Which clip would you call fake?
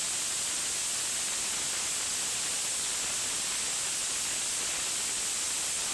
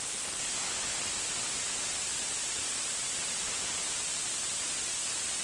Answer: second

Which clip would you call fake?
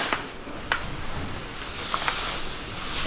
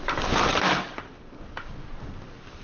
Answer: second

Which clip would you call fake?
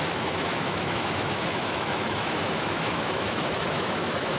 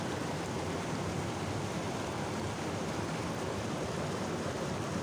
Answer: first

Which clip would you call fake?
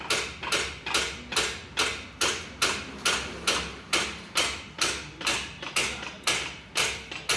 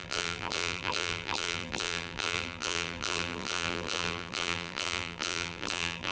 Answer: second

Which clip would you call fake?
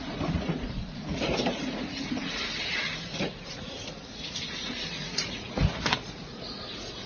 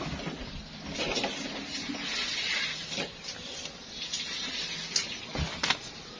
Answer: first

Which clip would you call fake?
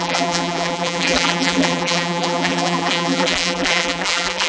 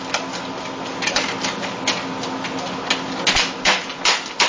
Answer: first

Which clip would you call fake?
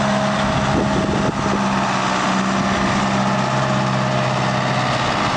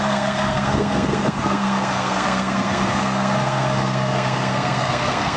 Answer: second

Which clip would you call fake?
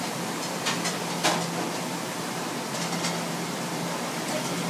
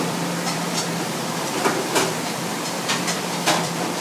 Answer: second